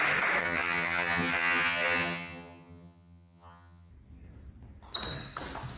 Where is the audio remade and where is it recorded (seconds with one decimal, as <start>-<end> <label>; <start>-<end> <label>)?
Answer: 0.0-0.4 recorded; 0.4-3.9 remade; 3.9-5.8 recorded